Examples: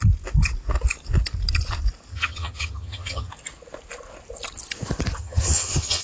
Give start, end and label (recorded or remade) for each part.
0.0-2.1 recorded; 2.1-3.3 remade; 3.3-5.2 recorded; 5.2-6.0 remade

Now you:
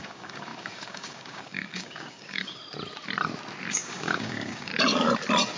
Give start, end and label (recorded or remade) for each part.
0.0-2.6 remade; 2.6-3.7 recorded; 3.7-4.7 remade; 4.7-5.6 recorded

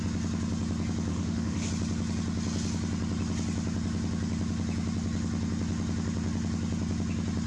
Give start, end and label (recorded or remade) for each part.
0.0-1.1 recorded; 1.1-1.7 remade; 1.7-7.5 recorded

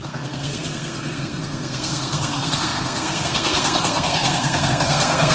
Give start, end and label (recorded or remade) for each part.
0.0-5.3 remade

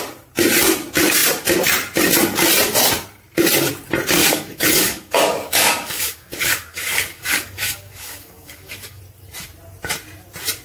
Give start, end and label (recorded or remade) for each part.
0.0-4.2 recorded; 4.2-9.0 remade; 9.0-10.6 recorded

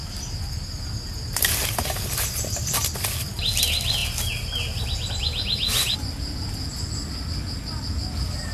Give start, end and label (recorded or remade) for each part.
0.0-8.5 recorded

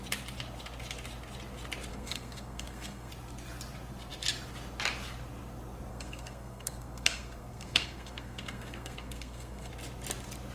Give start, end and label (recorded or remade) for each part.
0.0-1.9 recorded; 1.9-3.1 remade; 3.1-5.9 recorded; 5.9-9.7 remade; 9.7-10.5 recorded